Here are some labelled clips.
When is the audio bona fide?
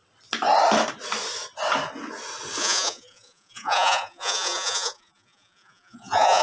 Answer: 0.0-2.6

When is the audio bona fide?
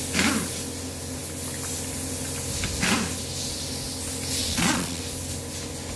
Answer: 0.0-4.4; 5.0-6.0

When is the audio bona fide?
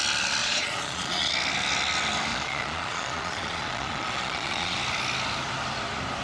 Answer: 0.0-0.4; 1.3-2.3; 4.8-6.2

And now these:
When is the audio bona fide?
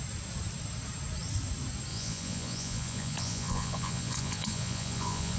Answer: 0.0-1.9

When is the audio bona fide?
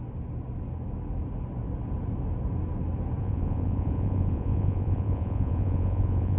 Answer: 0.0-3.2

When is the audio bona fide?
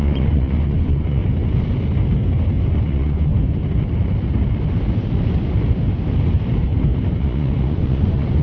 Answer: 1.2-2.7; 3.3-7.2